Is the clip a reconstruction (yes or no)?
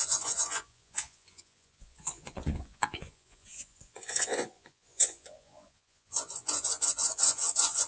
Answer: yes